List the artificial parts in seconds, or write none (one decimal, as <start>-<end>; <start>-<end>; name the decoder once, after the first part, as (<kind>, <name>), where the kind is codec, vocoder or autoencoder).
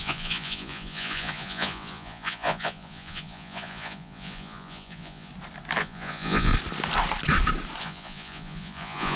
0.0-5.3 (vocoder, Vocos); 5.8-6.5; 7.8-9.2